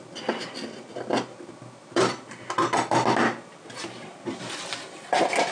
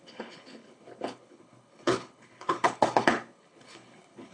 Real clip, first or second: first